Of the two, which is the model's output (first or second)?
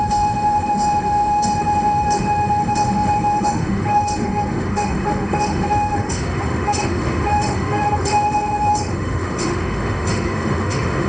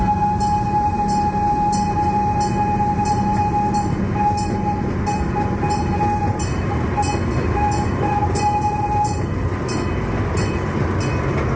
first